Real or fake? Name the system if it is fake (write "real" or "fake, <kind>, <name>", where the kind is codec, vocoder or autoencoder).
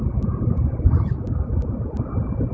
real